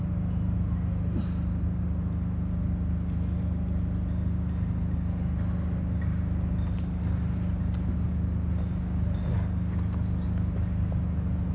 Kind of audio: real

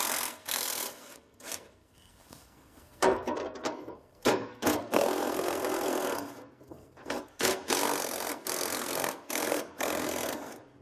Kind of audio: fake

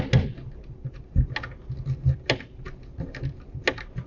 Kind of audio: real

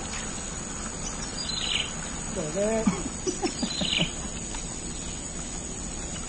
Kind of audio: real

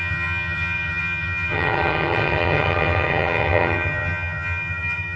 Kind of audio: fake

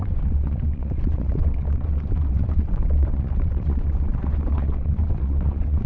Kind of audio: fake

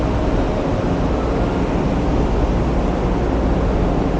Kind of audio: real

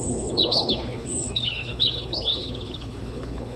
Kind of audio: fake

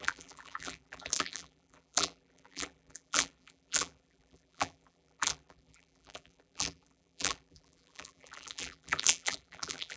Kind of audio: fake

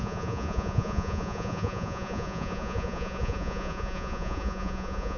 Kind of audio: fake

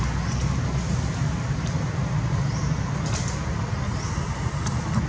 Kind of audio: real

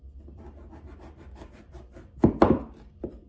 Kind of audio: real